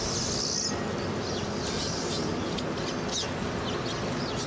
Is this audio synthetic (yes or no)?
no